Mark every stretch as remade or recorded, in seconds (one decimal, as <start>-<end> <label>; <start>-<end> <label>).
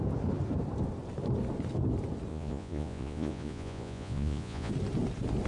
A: 0.0-2.3 recorded; 2.3-4.7 remade; 4.7-5.5 recorded